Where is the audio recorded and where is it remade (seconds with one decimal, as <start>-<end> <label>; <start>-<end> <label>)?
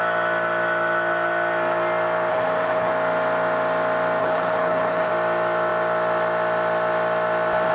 0.0-2.3 recorded; 2.3-2.9 remade; 2.9-4.2 recorded; 4.2-5.1 remade; 5.1-7.7 recorded